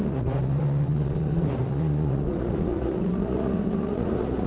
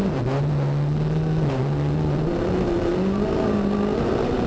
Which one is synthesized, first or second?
first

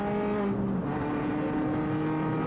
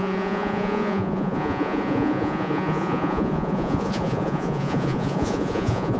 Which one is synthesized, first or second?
second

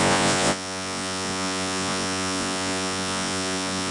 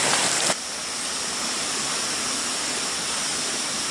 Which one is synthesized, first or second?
first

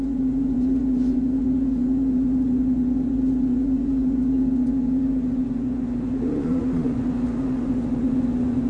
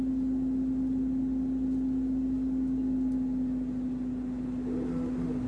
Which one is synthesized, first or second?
first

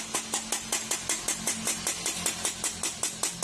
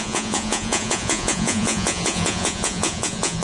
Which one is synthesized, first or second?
second